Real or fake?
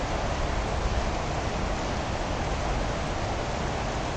real